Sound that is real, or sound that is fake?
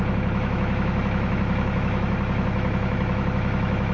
fake